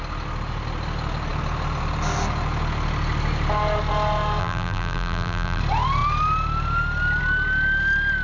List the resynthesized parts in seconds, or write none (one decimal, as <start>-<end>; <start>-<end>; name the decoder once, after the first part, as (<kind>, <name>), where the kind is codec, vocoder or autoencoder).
4.4-5.6 (vocoder, BigVGAN v2)